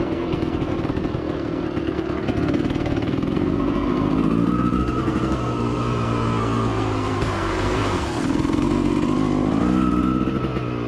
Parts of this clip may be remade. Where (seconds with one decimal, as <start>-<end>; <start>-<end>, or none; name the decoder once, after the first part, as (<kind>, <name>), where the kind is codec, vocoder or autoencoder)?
0.0-8.9 (codec, SNAC)